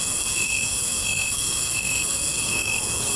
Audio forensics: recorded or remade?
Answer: remade